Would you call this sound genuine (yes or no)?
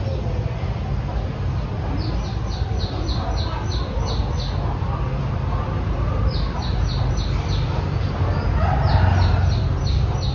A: yes